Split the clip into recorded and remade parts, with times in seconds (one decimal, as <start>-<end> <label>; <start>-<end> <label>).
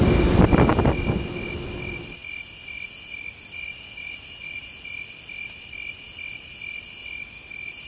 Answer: 0.0-7.9 recorded